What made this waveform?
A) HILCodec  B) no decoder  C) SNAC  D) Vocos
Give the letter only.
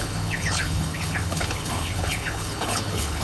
A